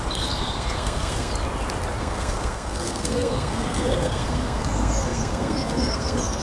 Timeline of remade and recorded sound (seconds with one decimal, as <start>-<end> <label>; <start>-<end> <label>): 0.0-1.3 remade; 1.3-2.0 recorded; 2.0-6.4 remade